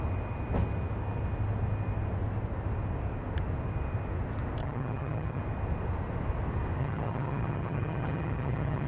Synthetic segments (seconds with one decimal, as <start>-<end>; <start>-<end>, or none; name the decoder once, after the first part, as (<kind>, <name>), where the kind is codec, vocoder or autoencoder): 4.6-5.4 (vocoder, HiFi-GAN); 6.8-8.9